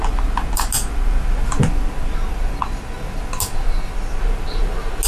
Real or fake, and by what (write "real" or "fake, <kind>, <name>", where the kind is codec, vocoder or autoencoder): real